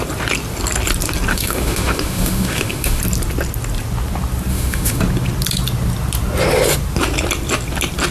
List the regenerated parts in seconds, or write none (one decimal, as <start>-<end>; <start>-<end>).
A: 1.3-3.0; 4.5-5.0